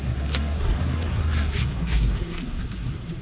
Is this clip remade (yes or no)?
yes